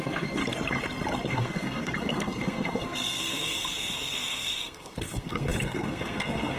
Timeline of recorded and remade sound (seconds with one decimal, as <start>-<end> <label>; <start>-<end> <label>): 0.0-0.4 remade; 0.4-1.3 recorded; 1.3-6.6 remade